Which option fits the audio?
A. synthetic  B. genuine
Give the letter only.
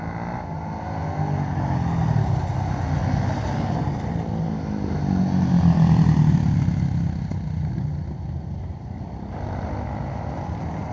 B